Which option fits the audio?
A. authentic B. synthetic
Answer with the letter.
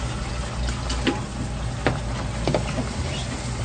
A